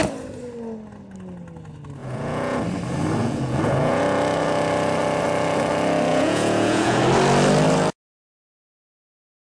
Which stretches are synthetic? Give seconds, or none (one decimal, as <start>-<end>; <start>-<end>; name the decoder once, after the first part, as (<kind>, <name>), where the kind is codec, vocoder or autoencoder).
2.0-2.6 (vocoder, Vocos); 3.2-4.0; 6.1-7.0